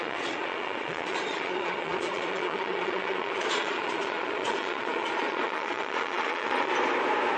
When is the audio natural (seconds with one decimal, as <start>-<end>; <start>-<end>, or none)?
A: 6.7-7.4